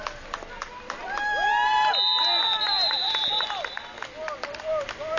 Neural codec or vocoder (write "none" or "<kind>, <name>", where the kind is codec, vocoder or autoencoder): none